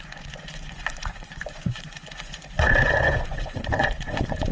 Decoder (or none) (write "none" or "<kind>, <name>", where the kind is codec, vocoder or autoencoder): vocoder, Vocos